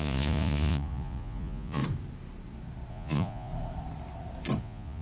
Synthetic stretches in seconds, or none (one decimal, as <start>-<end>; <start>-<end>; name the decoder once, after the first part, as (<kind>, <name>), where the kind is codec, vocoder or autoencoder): 0.0-1.8 (vocoder, Vocos); 2.9-3.5; 4.6-5.0